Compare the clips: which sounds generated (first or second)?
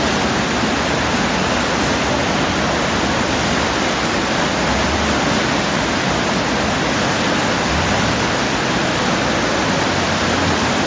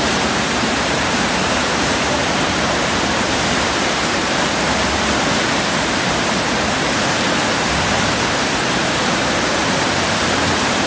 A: second